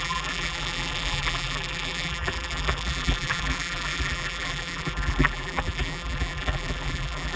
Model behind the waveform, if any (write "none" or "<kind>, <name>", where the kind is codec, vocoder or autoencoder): vocoder, BigVGAN v2